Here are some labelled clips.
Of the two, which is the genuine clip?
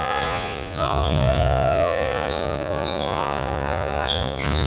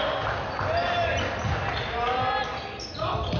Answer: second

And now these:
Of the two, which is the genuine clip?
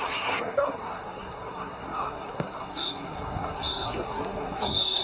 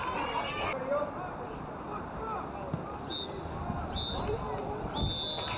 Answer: second